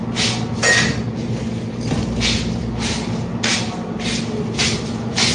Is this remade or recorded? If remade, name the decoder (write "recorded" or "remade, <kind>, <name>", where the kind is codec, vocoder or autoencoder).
recorded